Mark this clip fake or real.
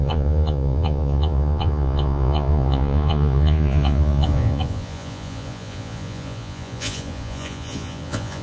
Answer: fake